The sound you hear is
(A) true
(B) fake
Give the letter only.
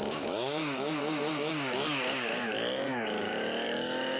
B